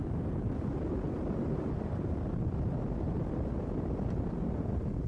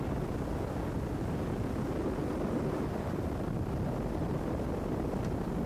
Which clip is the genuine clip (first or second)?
second